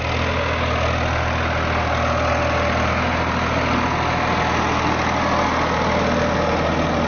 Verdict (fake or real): real